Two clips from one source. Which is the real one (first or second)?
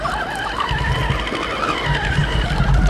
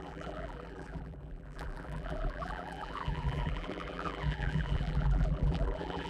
first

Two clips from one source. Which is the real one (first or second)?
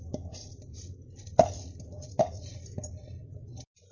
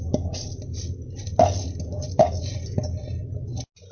second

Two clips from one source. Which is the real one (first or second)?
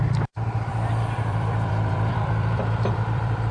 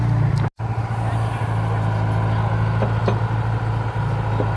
second